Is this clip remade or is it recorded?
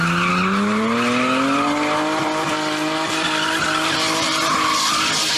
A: recorded